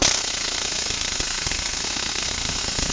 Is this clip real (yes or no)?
no